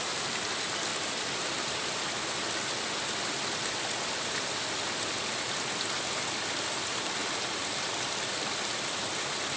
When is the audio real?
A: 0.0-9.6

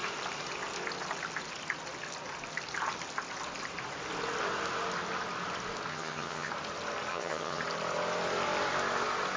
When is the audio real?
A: 0.0-5.9; 6.5-7.1; 7.6-9.4

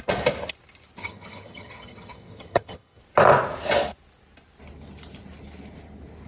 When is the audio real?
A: 0.0-1.0; 3.0-6.3

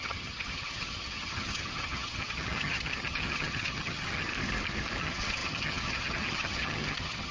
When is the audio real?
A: 4.3-5.0

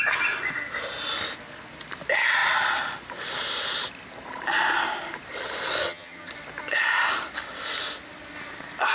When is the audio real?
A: 0.0-5.8; 6.3-8.9

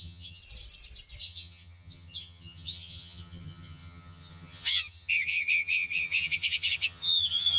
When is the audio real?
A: 0.4-1.2